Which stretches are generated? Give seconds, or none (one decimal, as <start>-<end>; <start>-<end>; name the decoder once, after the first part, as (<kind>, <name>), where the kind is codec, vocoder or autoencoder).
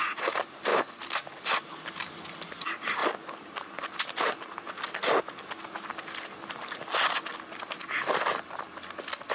none